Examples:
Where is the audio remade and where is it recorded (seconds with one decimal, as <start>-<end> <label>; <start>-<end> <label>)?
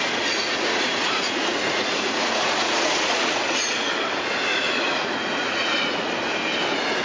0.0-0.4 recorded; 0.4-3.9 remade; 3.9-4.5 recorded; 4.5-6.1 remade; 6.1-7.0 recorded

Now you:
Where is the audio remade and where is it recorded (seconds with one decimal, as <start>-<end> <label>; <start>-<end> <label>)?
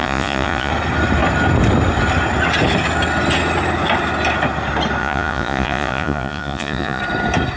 0.0-0.7 remade; 0.7-5.0 recorded; 5.0-7.0 remade; 7.0-7.6 recorded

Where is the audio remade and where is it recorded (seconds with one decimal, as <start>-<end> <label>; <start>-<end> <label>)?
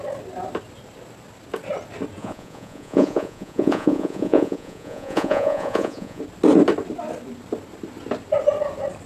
0.0-2.2 recorded; 2.2-6.2 remade; 6.2-9.1 recorded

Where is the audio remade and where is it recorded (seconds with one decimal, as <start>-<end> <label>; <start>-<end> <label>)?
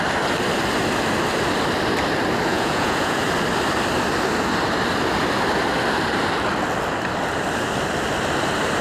0.0-2.5 recorded; 2.5-3.2 remade; 3.2-8.8 recorded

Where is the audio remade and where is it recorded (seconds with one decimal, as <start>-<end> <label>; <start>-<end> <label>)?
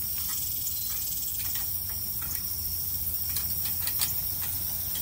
0.0-5.0 recorded